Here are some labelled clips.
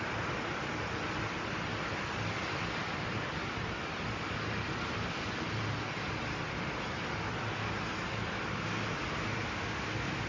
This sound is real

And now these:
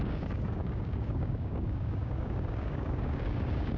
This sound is fake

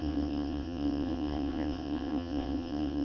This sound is fake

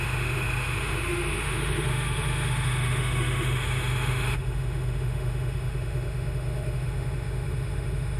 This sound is fake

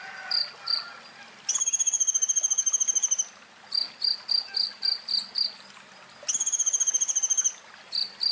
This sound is real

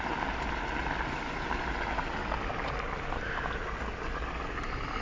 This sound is real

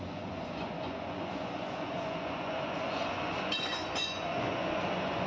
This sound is fake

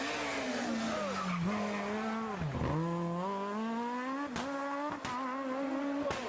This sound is real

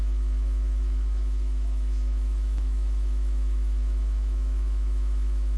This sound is fake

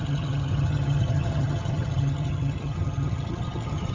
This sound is fake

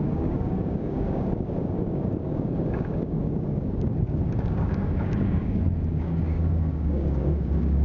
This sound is fake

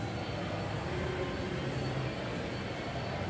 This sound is real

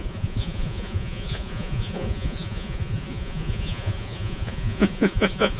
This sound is fake